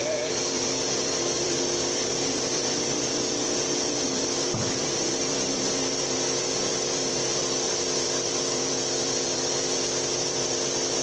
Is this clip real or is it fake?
fake